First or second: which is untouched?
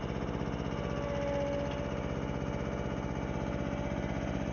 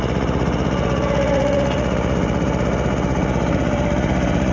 first